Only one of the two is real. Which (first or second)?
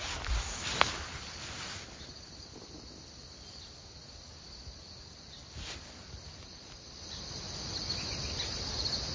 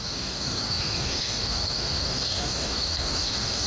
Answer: first